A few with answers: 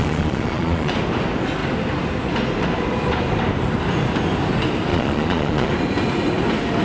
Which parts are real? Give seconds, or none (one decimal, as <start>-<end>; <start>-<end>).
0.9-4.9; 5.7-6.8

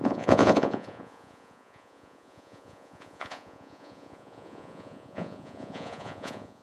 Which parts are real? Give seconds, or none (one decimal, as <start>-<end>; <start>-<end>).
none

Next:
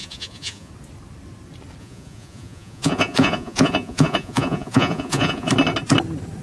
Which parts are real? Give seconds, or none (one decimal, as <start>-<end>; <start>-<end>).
0.7-1.8; 5.5-6.4

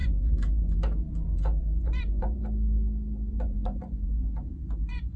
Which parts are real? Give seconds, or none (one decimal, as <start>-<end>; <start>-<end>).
2.4-3.3